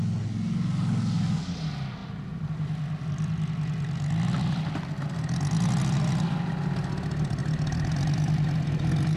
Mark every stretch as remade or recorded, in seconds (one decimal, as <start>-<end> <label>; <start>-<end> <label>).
0.0-9.2 recorded